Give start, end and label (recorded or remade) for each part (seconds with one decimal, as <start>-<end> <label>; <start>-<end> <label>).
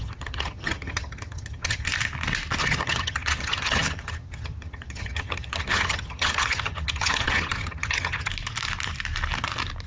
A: 0.0-1.9 remade; 1.9-2.6 recorded; 2.6-8.3 remade; 8.3-9.9 recorded